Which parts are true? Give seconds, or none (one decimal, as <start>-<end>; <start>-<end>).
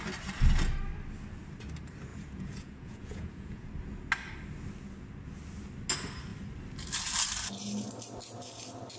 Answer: 0.0-2.1; 3.7-9.0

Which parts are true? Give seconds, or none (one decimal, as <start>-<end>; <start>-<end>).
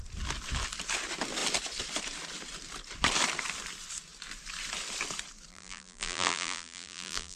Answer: 0.0-5.5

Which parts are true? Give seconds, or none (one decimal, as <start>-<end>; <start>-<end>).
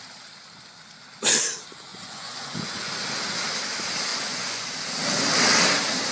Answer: 0.0-1.9; 2.9-4.1; 4.7-6.1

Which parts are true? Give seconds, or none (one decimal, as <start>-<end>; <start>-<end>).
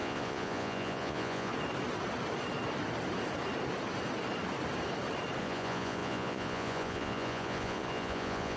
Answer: 1.5-5.4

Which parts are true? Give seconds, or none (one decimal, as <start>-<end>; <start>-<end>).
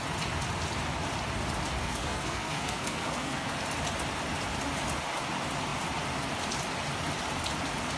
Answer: 0.0-1.8; 3.5-8.0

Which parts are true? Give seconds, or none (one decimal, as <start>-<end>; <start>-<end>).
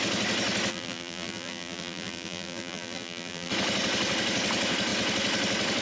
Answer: 0.0-0.7; 3.5-5.8